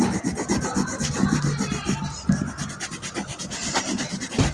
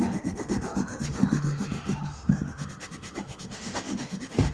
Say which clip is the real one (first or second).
first